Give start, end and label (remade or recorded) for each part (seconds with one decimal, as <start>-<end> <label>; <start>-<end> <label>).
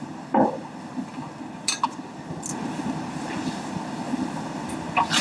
0.0-5.2 recorded